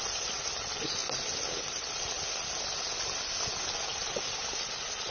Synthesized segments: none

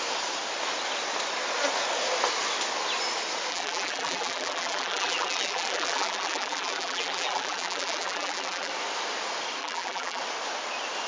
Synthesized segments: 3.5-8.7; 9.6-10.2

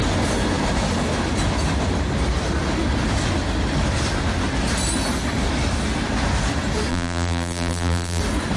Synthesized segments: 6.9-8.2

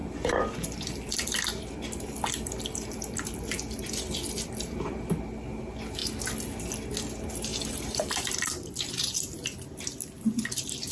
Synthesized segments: 0.0-5.1; 7.5-8.9

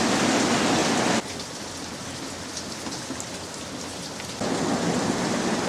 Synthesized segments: none

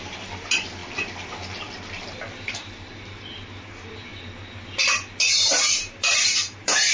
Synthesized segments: 0.0-0.8; 2.5-4.1; 5.3-6.9

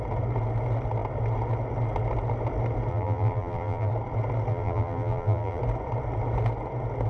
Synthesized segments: 2.9-3.9; 4.5-5.6